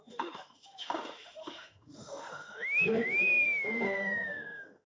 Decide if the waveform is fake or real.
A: fake